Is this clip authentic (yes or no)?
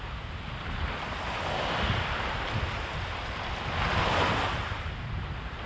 yes